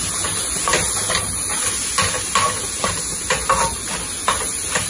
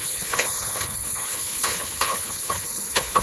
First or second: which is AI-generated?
second